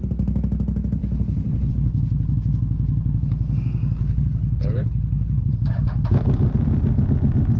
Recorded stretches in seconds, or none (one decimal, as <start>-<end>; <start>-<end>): 0.0-1.0; 1.7-4.0; 5.5-7.6